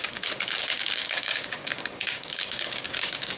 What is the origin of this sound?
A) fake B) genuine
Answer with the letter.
A